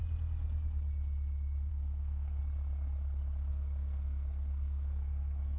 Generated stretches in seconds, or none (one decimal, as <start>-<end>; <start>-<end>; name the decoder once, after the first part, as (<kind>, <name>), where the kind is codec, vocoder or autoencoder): 1.7-2.4 (codec, SNAC); 3.5-5.6